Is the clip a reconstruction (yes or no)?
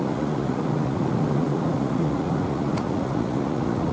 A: yes